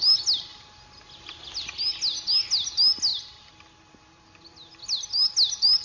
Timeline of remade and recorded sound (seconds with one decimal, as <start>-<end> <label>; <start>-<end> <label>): 0.0-5.8 recorded